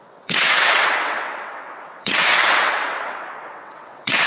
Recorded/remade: remade